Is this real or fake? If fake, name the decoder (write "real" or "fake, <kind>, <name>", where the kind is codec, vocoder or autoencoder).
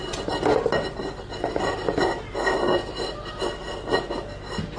real